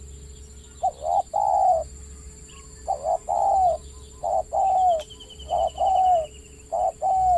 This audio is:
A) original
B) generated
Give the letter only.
A